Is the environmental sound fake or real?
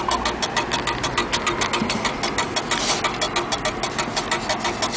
real